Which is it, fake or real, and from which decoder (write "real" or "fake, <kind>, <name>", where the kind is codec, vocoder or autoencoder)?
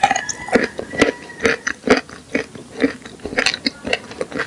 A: real